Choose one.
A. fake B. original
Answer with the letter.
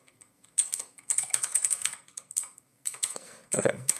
A